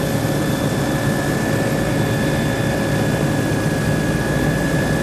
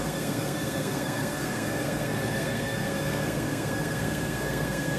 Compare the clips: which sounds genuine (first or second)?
first